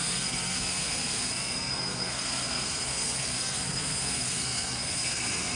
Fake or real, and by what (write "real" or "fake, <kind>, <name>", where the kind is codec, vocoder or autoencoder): fake, codec, SNAC